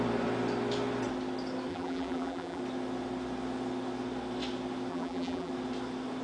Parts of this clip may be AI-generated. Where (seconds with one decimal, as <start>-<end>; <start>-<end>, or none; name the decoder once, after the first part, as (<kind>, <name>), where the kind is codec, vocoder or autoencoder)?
1.7-2.6 (vocoder, BigVGAN v2); 4.9-5.5